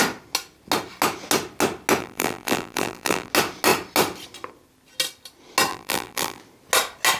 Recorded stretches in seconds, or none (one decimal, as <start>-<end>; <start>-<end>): 0.0-2.0; 3.3-5.7; 6.4-7.2